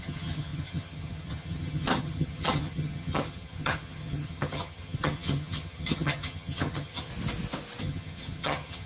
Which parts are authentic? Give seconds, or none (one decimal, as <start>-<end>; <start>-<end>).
7.1-7.8